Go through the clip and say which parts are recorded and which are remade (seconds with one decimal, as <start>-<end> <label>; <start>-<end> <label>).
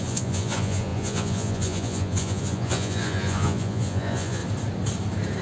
0.0-4.4 remade; 4.4-5.4 recorded